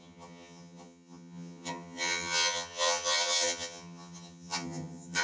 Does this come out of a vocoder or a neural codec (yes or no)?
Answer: yes